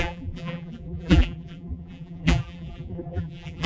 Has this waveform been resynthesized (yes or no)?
yes